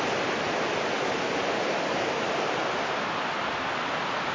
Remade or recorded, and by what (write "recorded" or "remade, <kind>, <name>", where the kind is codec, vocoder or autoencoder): recorded